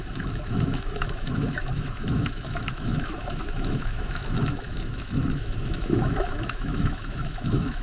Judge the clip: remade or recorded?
remade